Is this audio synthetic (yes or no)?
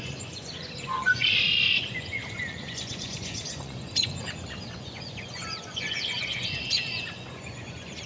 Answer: yes